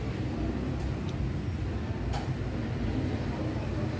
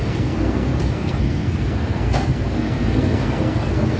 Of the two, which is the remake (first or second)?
second